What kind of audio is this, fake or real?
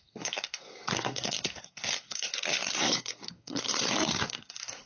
fake